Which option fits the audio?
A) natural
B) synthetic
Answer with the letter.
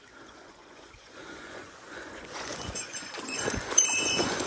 B